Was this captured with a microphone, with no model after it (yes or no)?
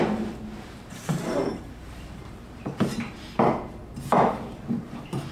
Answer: no